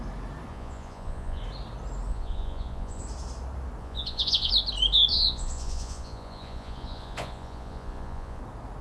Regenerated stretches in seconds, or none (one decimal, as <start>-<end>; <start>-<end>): 0.5-1.4; 2.1-3.0; 3.8-4.5; 5.1-8.4